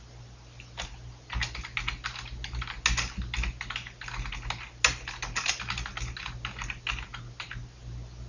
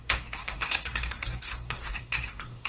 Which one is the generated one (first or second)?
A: second